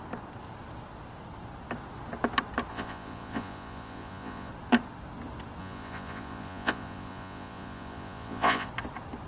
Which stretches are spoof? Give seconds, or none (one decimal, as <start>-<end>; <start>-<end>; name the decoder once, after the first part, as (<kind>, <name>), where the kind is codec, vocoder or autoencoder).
2.7-4.5 (vocoder, Vocos); 5.6-8.7